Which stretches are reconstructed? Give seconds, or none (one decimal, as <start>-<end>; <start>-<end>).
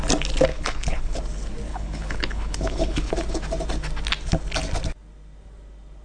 0.5-1.2; 1.7-3.1